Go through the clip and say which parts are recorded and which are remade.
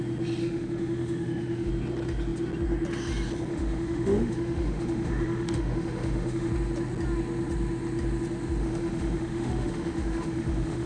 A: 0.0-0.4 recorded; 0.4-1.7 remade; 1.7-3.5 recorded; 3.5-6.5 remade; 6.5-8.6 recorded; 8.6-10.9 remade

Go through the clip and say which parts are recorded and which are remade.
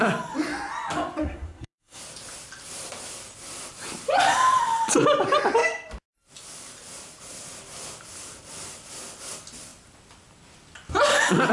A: 0.0-1.2 recorded; 1.2-2.0 remade; 2.0-11.5 recorded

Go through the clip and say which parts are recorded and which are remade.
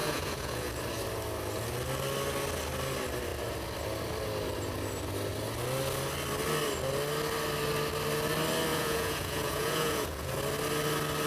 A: 0.0-0.7 remade; 0.7-8.7 recorded; 8.7-10.3 remade; 10.3-11.3 recorded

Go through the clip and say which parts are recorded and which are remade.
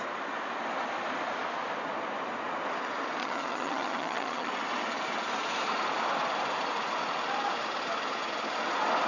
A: 0.0-3.2 recorded; 3.2-4.5 remade; 4.5-9.1 recorded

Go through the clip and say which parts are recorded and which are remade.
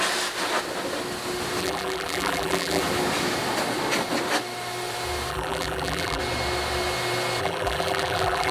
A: 0.0-1.6 recorded; 1.6-2.8 remade; 2.8-5.3 recorded; 5.3-6.2 remade; 6.2-7.4 recorded; 7.4-8.5 remade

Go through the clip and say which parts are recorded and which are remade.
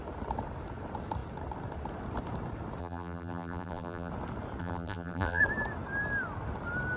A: 0.0-2.8 recorded; 2.8-4.1 remade; 4.1-4.6 recorded; 4.6-5.4 remade; 5.4-7.0 recorded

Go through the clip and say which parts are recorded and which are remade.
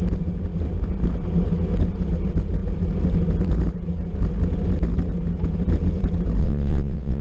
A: 0.0-6.4 recorded; 6.4-7.2 remade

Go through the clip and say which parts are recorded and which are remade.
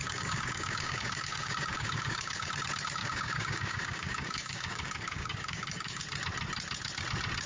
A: 0.0-2.5 remade; 2.5-3.0 recorded; 3.0-6.0 remade; 6.0-7.5 recorded